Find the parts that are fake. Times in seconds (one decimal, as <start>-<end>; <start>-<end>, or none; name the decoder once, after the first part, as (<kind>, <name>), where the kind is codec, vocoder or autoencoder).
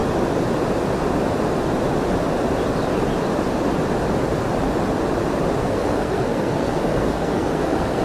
5.6-8.0 (codec, SNAC)